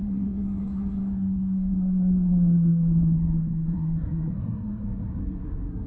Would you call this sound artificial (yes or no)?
yes